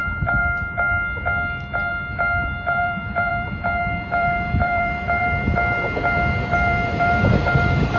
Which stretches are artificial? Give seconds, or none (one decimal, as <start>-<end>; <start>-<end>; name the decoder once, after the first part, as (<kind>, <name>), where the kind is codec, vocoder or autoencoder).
0.0-0.4 (vocoder, BigVGAN v2); 1.9-8.0